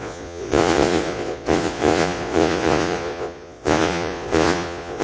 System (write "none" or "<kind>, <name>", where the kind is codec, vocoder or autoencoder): vocoder, Vocos